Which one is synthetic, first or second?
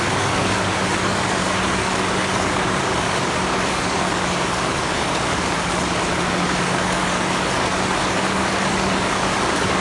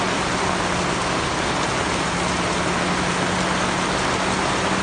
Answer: first